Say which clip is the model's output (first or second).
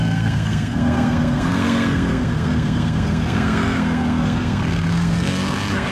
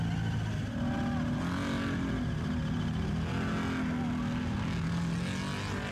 first